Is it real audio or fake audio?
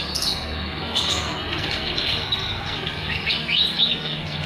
fake